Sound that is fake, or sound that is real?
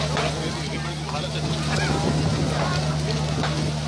real